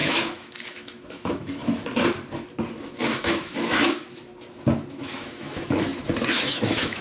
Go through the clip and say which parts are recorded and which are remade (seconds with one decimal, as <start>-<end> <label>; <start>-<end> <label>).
0.0-1.6 remade; 1.6-2.7 recorded; 2.7-4.3 remade; 4.3-4.9 recorded; 4.9-7.0 remade

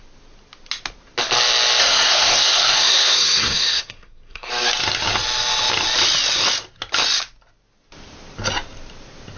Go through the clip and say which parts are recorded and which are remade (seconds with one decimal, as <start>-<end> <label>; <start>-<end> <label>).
0.0-1.8 recorded; 1.8-4.5 remade; 4.5-9.4 recorded

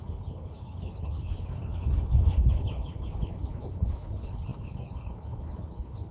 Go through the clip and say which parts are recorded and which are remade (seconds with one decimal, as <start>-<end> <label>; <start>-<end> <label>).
0.0-6.1 remade

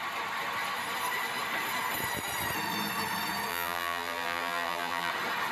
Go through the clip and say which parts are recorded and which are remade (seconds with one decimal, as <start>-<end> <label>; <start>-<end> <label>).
0.0-3.5 recorded; 3.5-5.1 remade; 5.1-5.5 recorded

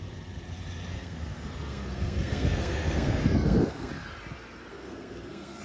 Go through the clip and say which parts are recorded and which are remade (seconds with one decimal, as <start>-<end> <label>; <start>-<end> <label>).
0.0-0.9 recorded; 0.9-3.9 remade; 3.9-4.7 recorded; 4.7-5.6 remade

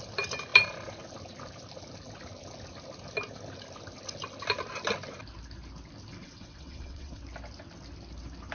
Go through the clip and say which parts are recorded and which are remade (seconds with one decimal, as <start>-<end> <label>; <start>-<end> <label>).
0.0-6.2 recorded; 6.2-7.2 remade; 7.2-8.5 recorded

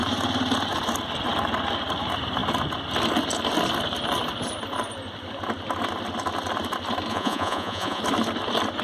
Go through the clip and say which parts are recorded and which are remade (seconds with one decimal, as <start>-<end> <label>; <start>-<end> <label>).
0.0-7.1 recorded; 7.1-8.0 remade; 8.0-8.8 recorded

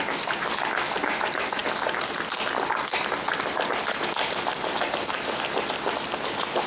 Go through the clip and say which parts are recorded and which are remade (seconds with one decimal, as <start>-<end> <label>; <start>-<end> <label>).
0.0-6.7 recorded